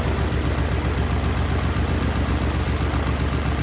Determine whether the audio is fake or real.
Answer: real